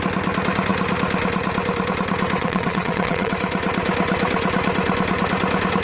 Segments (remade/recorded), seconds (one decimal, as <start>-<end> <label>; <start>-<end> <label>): 0.0-2.4 recorded; 2.4-3.3 remade; 3.3-5.8 recorded